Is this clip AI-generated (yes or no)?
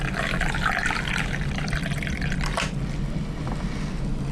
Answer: no